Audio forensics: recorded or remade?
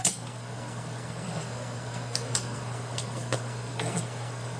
remade